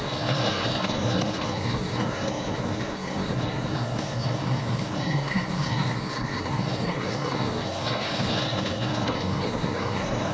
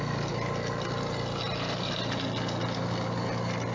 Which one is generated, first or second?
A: first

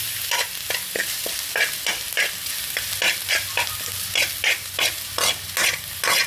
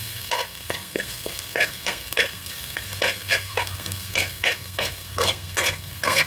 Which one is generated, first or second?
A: second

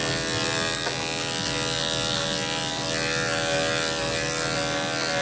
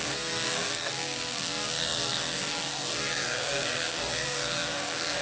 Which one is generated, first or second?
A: second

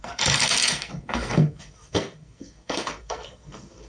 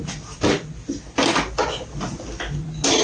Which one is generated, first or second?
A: first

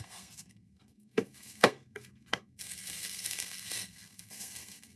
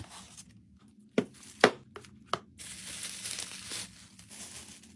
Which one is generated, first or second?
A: first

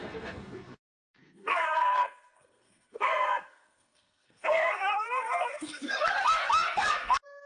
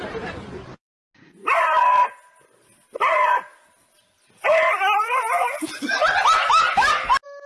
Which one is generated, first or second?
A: first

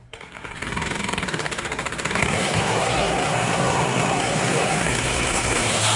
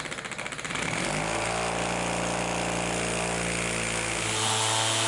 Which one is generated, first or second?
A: first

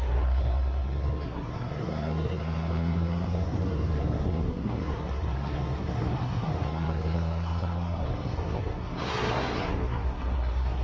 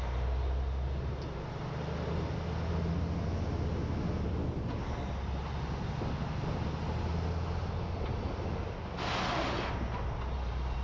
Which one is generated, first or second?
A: first